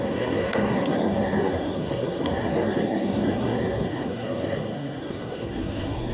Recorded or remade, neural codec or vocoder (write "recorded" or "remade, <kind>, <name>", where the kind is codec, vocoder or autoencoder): remade, codec, SNAC